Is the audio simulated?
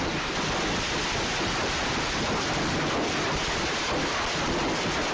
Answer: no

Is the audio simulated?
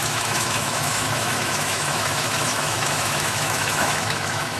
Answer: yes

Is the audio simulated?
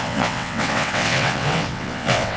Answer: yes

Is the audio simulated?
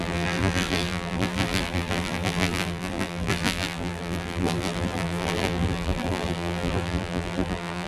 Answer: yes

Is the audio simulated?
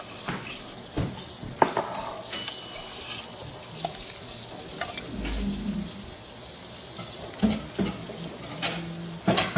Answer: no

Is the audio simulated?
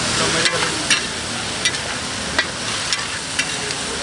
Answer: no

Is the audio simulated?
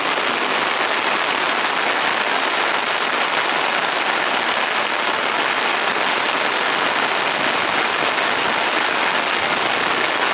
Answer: no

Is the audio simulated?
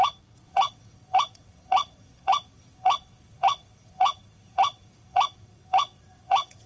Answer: yes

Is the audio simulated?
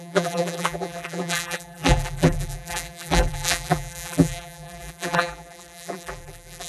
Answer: yes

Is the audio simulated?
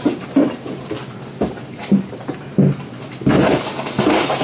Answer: no